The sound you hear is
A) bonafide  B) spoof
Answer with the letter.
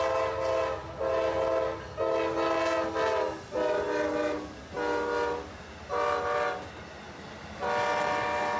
A